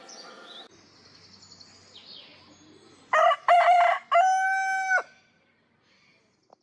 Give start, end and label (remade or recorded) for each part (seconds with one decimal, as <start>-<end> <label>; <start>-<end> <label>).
0.0-6.6 recorded